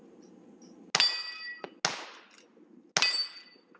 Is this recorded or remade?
recorded